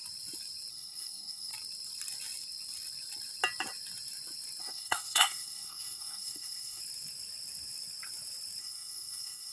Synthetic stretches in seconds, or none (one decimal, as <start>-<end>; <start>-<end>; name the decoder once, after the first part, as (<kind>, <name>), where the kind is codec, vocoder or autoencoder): 0.7-1.5 (codec, SNAC); 4.6-6.8; 8.6-9.5